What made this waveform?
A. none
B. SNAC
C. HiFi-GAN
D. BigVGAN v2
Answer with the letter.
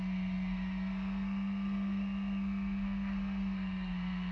B